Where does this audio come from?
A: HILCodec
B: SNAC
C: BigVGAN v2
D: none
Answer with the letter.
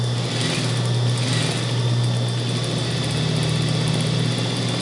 D